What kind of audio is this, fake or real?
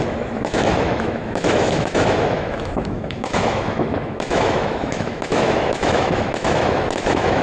fake